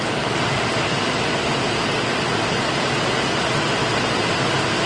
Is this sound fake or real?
real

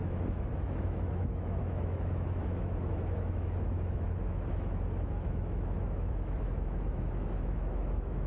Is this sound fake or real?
fake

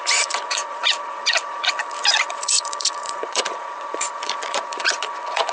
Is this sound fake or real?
fake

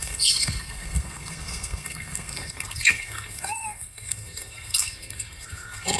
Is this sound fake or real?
fake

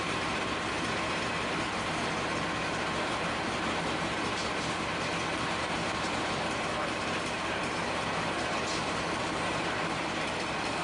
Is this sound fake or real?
fake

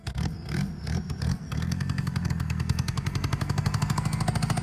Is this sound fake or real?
fake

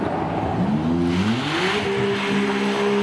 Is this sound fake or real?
real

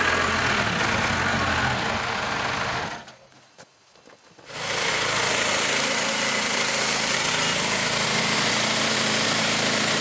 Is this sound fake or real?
real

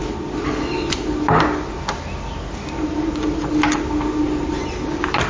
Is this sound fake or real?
real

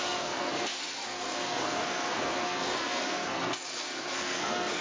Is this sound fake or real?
fake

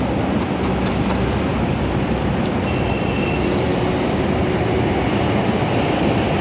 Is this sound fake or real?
real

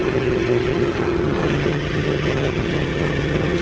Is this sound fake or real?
fake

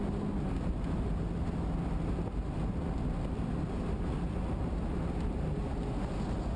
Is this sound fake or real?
real